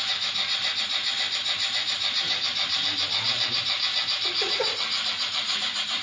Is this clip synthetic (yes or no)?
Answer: yes